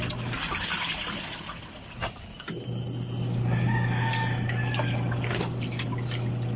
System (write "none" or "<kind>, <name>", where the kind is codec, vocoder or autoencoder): none